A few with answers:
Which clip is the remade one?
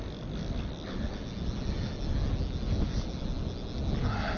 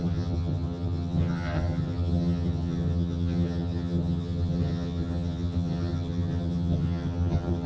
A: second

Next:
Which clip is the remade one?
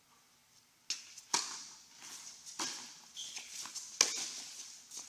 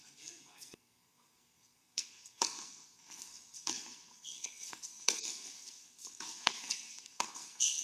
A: second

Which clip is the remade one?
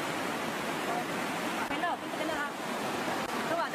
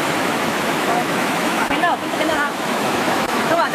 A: second